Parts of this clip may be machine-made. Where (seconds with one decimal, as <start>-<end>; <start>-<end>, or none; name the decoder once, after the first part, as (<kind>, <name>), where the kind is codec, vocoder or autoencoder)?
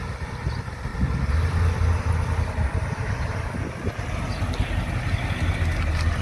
none